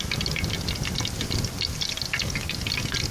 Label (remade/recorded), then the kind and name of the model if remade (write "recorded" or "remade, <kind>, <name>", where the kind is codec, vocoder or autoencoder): recorded